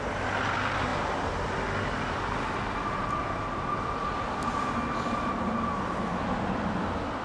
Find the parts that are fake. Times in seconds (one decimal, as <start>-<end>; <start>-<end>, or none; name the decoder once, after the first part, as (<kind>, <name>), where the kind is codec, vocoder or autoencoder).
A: none